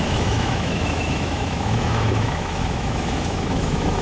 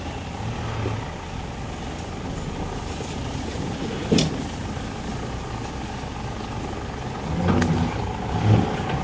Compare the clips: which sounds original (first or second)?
second